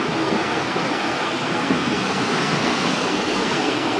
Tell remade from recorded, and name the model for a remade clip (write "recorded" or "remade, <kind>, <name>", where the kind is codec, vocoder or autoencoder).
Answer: remade, codec, SNAC